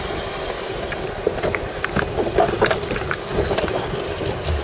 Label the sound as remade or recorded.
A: recorded